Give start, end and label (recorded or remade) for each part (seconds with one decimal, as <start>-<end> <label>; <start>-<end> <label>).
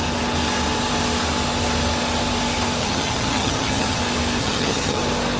0.0-2.8 recorded; 2.8-4.0 remade; 4.0-4.4 recorded; 4.4-5.0 remade; 5.0-5.4 recorded